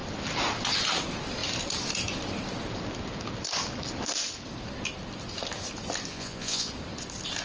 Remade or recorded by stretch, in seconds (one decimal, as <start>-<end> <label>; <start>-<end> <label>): 0.0-6.1 recorded; 6.1-6.7 remade; 6.7-7.4 recorded